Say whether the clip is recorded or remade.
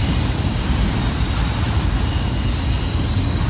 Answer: recorded